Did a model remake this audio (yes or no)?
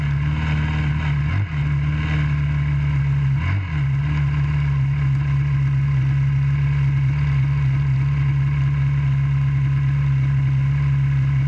no